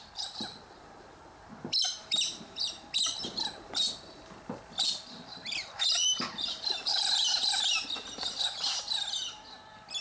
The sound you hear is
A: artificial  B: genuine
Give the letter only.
A